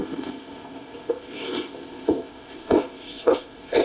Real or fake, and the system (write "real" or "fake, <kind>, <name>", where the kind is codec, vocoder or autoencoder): fake, codec, ZipCodec